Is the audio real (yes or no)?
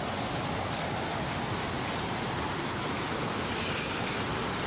yes